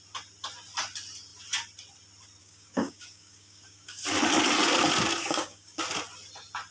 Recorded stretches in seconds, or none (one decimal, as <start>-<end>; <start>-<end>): 0.0-2.4; 4.0-5.2; 5.8-6.7